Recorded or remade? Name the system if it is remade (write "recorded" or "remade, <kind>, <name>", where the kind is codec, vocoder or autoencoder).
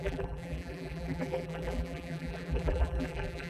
remade, vocoder, BigVGAN v2